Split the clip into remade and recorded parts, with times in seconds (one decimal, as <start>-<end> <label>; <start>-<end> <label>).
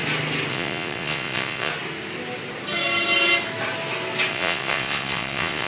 0.0-0.5 recorded; 0.5-1.7 remade; 1.7-4.3 recorded; 4.3-5.7 remade